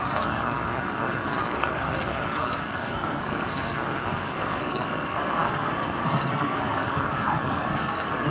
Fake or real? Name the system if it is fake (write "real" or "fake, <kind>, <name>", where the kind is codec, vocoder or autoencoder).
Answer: fake, codec, SNAC